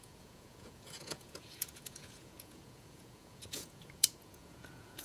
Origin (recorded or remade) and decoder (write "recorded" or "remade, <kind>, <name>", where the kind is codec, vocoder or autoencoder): remade, vocoder, Vocos